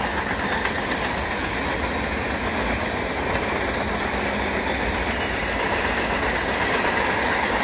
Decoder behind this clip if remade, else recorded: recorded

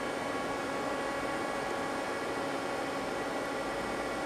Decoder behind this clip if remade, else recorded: recorded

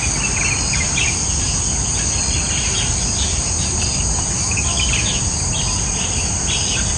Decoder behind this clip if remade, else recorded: recorded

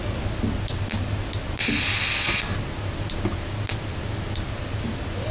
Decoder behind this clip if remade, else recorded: recorded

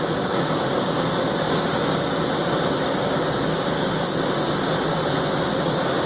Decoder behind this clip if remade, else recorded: recorded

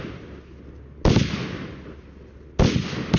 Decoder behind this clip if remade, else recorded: recorded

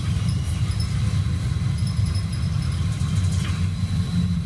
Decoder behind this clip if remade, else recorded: recorded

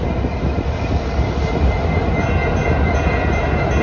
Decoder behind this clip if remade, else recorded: recorded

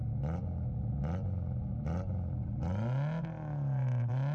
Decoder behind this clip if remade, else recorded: recorded